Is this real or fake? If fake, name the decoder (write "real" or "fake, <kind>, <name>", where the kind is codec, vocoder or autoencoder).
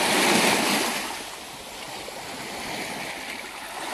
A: real